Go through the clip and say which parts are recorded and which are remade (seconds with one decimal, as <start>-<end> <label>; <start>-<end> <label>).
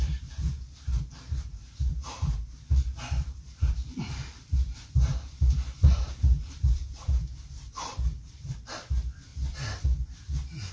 0.0-9.3 remade; 9.3-10.7 recorded